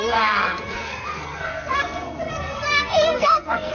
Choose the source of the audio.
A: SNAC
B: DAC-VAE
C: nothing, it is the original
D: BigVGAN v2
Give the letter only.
A